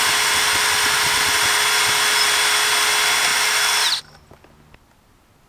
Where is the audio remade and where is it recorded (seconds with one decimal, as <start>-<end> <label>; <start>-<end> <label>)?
0.0-5.5 recorded